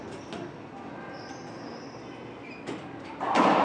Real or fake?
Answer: real